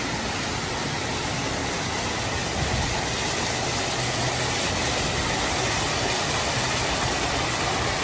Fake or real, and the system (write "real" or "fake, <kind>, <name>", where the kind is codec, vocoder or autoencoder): real